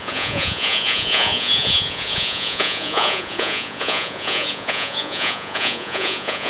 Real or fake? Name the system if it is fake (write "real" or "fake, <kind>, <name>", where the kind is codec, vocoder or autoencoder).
fake, vocoder, Vocos